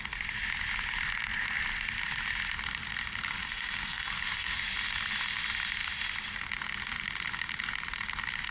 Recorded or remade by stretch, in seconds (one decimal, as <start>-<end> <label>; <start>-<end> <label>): 0.0-3.3 recorded; 3.3-4.6 remade; 4.6-8.5 recorded